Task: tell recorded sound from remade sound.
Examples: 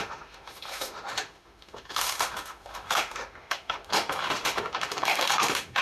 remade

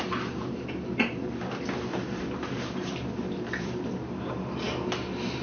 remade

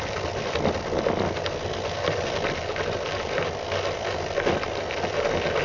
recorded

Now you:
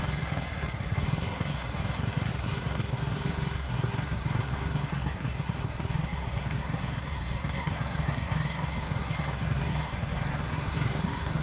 remade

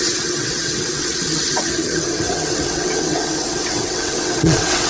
remade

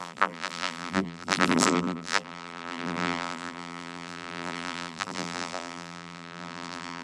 remade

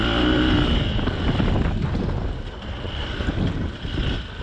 recorded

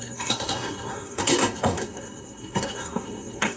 remade